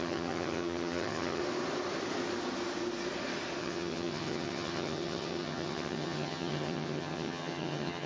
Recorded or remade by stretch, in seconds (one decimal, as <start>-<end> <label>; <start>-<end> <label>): 0.0-1.4 remade; 1.4-3.6 recorded; 3.6-8.1 remade